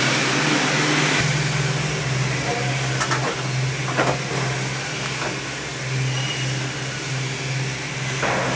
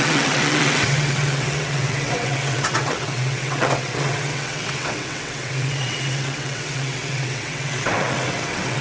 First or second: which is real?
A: first